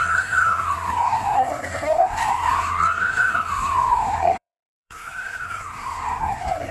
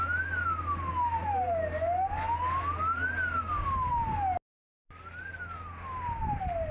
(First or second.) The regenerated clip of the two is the first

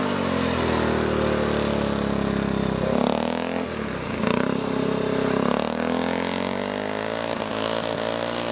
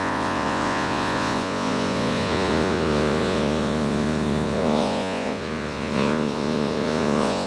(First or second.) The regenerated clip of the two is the second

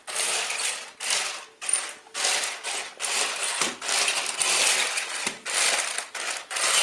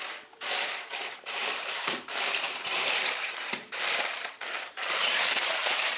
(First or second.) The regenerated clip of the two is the second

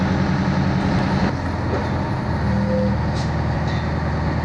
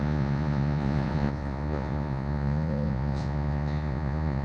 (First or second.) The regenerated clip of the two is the second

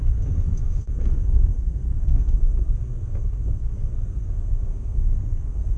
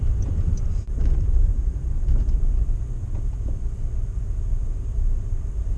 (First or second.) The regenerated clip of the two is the first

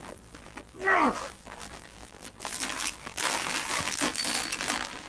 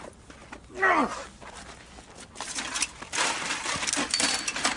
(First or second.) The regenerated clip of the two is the first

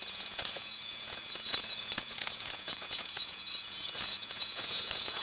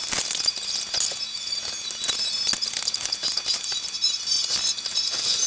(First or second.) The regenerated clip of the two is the first